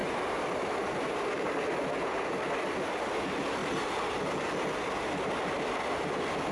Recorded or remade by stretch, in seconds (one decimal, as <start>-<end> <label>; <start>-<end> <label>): 0.0-1.6 remade; 1.6-6.5 recorded